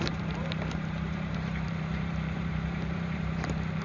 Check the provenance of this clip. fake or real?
fake